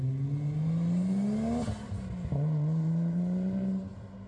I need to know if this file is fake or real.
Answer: real